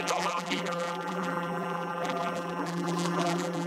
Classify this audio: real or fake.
fake